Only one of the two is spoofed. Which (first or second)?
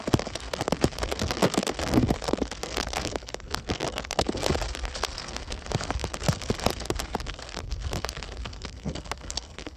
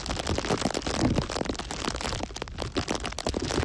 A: first